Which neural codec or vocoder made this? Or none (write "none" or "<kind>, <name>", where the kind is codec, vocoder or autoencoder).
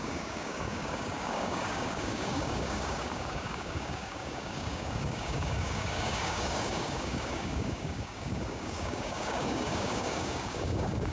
codec, DAC